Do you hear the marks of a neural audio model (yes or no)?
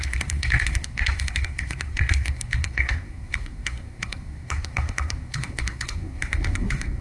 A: yes